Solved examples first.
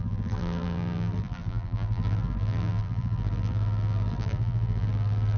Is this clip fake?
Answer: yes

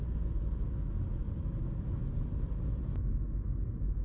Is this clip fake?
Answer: no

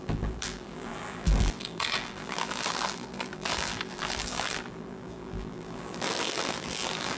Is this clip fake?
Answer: yes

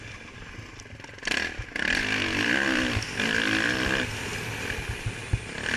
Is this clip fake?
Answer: no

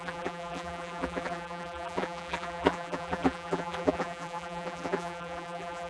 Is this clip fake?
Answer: yes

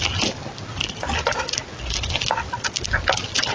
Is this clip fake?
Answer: no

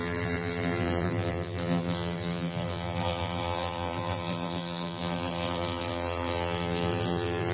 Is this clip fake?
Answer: yes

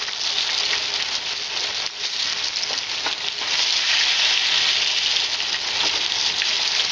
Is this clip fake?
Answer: no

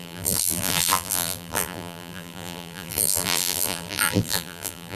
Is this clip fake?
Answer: yes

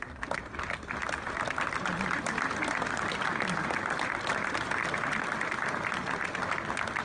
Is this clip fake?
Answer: no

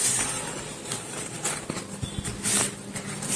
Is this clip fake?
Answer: yes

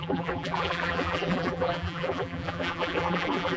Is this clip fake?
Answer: yes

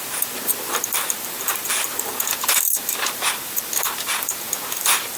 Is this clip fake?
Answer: yes